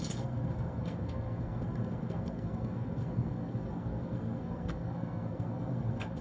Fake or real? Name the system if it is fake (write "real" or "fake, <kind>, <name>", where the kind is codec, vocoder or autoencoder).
fake, codec, SNAC